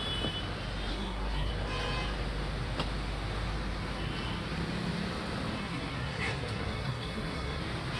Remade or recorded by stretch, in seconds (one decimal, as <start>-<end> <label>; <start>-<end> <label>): 0.0-0.9 recorded; 0.9-1.5 remade; 1.5-5.6 recorded; 5.6-7.6 remade; 7.6-8.0 recorded

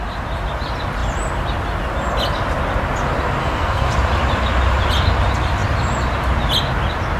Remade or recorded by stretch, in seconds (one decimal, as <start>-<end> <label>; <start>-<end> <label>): 0.0-3.4 recorded; 3.4-3.9 remade; 3.9-7.2 recorded

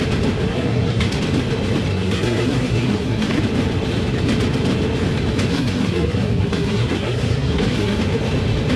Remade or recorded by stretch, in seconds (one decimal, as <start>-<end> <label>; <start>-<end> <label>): 0.0-0.5 recorded; 0.5-1.2 remade; 1.2-1.9 recorded; 1.9-3.4 remade; 3.4-5.5 recorded; 5.5-8.0 remade; 8.0-8.8 recorded

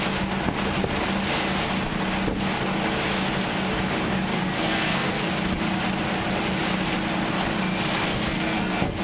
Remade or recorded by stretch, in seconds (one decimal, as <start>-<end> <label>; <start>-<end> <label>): 0.0-4.3 recorded; 4.3-5.3 remade; 5.3-8.1 recorded; 8.1-9.0 remade

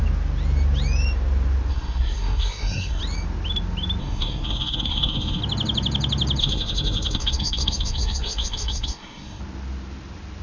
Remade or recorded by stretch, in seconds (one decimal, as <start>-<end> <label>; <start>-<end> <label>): 0.0-1.7 recorded; 1.7-3.0 remade; 3.0-4.0 recorded; 4.0-5.4 remade; 5.4-6.4 recorded; 6.4-9.4 remade; 9.4-10.4 recorded

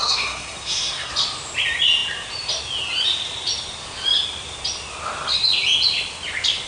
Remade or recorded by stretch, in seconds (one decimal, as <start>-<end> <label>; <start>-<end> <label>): 0.0-1.1 remade; 1.1-6.7 recorded

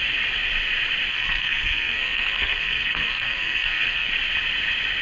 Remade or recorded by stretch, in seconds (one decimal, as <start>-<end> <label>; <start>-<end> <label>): 0.0-1.1 recorded; 1.1-4.1 remade; 4.1-5.0 recorded

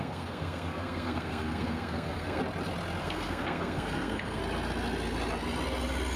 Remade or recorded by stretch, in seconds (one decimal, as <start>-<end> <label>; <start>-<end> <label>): 0.0-2.4 remade; 2.4-3.0 recorded; 3.0-4.4 remade; 4.4-6.2 recorded